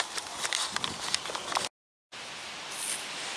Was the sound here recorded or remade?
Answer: recorded